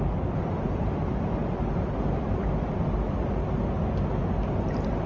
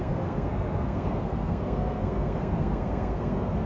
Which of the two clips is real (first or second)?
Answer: first